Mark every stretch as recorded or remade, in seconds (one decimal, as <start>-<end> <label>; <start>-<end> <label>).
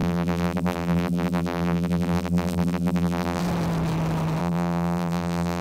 0.0-3.4 remade; 3.4-4.4 recorded; 4.4-5.6 remade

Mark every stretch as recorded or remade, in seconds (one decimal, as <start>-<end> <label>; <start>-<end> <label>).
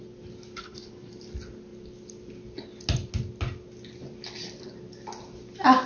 0.0-0.6 recorded; 0.6-1.1 remade; 1.1-5.9 recorded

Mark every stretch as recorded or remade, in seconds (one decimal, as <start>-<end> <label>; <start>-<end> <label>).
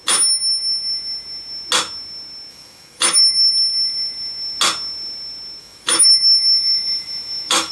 0.0-2.5 recorded; 2.5-3.5 remade; 3.5-5.6 recorded; 5.6-7.7 remade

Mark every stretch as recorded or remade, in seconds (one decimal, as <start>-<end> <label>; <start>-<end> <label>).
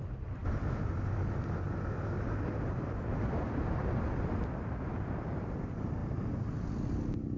0.0-6.0 remade; 6.0-7.4 recorded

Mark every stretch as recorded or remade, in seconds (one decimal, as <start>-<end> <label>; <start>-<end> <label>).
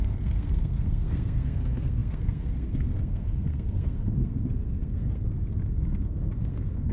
0.0-6.9 remade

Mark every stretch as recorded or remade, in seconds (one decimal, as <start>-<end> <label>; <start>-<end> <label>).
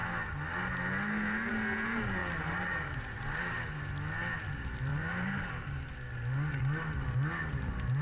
0.0-2.2 recorded; 2.2-3.7 remade; 3.7-4.9 recorded; 4.9-5.9 remade; 5.9-8.0 recorded